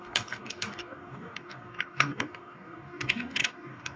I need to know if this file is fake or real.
fake